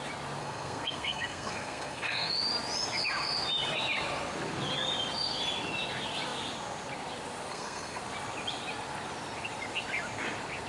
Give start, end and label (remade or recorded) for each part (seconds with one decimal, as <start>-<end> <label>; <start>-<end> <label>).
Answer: 0.0-0.4 recorded; 0.4-2.3 remade; 2.3-7.5 recorded; 7.5-8.0 remade; 8.0-10.7 recorded